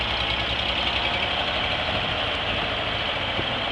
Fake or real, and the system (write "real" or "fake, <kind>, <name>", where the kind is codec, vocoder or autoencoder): real